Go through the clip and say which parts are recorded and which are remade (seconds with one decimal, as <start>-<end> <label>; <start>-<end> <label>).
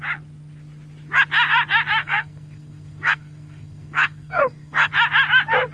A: 0.0-2.0 recorded; 2.0-4.9 remade; 4.9-5.7 recorded